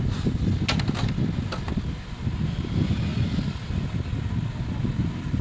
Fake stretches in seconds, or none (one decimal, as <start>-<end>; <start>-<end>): none